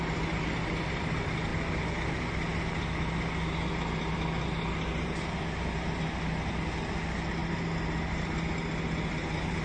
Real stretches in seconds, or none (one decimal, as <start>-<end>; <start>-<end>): 0.0-9.6